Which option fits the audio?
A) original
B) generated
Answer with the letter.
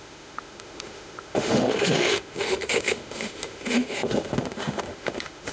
B